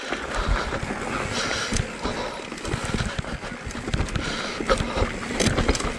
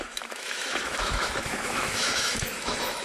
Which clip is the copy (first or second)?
second